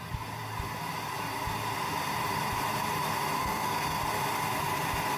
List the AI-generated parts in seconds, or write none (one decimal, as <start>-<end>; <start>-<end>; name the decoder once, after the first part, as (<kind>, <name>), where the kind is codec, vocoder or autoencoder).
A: 3.4-4.0 (codec, SNAC)